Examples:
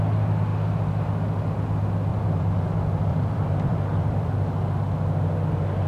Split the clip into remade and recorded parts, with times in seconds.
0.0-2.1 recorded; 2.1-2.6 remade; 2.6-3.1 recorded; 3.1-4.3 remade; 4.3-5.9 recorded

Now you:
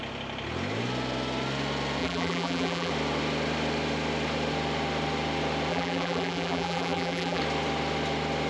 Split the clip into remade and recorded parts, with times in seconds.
0.0-2.0 recorded; 2.0-2.9 remade; 2.9-5.7 recorded; 5.7-7.4 remade; 7.4-8.5 recorded

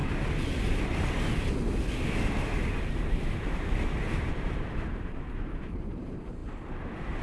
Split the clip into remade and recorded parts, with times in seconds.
0.0-2.9 recorded; 2.9-7.2 remade

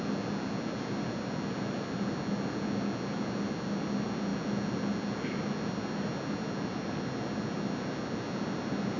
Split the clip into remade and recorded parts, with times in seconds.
0.0-9.0 recorded

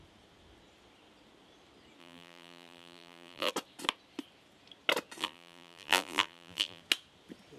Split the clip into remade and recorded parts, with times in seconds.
0.0-2.0 recorded; 2.0-3.5 remade; 3.5-5.2 recorded; 5.2-6.8 remade; 6.8-7.6 recorded

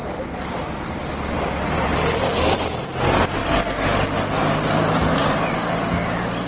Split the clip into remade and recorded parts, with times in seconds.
0.0-1.9 recorded; 1.9-2.8 remade; 2.8-6.5 recorded